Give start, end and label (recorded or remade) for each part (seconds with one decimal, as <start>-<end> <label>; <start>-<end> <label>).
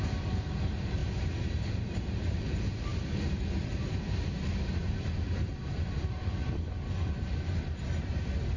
0.0-2.9 recorded; 2.9-7.8 remade; 7.8-8.6 recorded